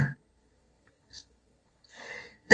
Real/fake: fake